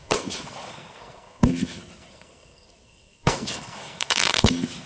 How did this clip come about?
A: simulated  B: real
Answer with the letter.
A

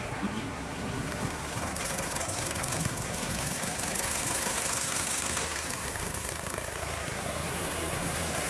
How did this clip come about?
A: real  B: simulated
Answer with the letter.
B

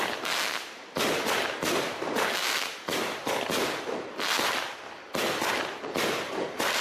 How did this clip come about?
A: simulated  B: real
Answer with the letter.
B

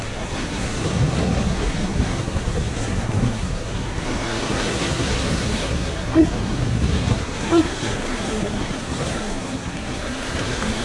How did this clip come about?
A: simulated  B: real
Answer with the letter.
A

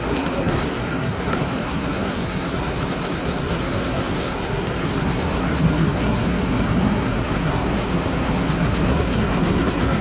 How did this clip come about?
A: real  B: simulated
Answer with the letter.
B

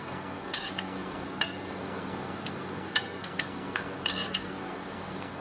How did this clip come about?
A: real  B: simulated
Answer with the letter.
B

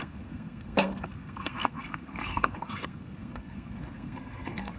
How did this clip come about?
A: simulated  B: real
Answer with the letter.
A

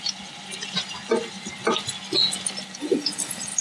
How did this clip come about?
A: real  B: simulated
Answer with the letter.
A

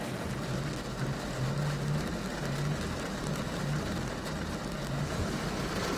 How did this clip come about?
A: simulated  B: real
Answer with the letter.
B